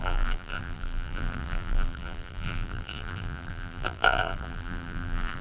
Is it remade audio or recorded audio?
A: remade